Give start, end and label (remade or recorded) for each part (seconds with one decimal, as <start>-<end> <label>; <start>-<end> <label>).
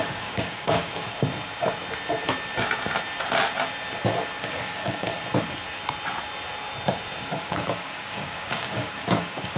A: 0.0-0.9 remade; 0.9-4.4 recorded; 4.4-5.1 remade; 5.1-7.3 recorded; 7.3-9.6 remade